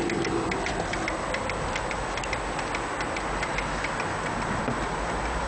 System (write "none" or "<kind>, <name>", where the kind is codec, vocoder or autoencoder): none